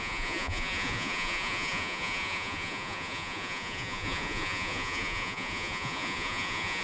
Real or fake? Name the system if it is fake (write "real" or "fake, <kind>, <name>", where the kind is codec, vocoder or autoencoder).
fake, vocoder, Vocos